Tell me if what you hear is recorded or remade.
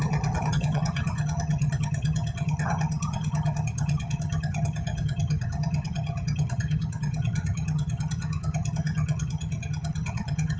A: remade